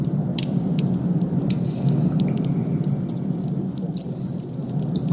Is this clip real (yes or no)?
no